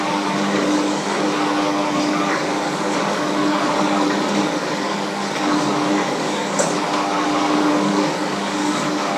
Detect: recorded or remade remade